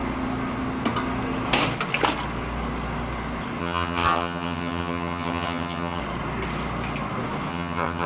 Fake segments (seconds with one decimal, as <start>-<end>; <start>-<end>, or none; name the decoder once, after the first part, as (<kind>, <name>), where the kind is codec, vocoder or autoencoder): 3.6-6.0 (vocoder, HiFi-GAN); 7.5-8.1